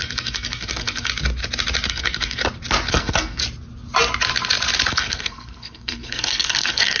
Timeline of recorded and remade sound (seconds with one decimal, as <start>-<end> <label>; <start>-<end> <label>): 0.0-1.1 remade; 1.1-1.9 recorded; 1.9-2.4 remade; 2.4-2.9 recorded; 2.9-3.4 remade; 3.4-4.9 recorded; 4.9-7.0 remade